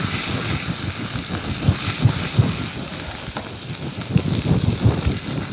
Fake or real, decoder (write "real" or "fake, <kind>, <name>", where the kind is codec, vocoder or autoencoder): real